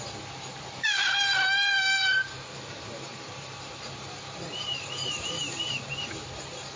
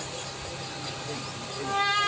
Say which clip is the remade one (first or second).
first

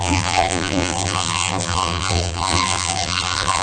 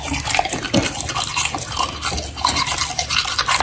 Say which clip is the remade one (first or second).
first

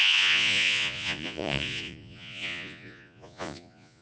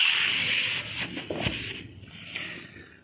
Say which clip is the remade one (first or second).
first